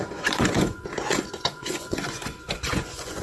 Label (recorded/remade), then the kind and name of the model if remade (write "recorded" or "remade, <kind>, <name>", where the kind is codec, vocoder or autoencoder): remade, vocoder, Vocos